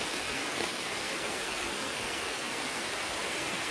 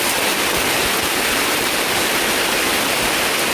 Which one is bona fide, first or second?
second